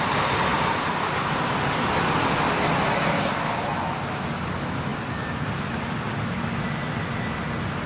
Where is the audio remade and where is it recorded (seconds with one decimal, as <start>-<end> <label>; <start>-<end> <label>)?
0.0-7.9 recorded